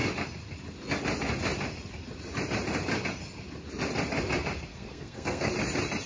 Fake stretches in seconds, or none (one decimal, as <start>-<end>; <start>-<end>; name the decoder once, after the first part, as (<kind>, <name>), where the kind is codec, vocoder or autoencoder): 4.7-5.5 (codec, SNAC)